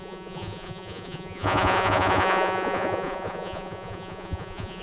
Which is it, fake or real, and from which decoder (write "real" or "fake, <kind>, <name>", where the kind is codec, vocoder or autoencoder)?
fake, vocoder, Vocos